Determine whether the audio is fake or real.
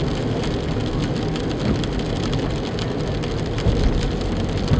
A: real